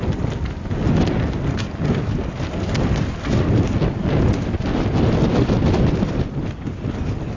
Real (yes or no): yes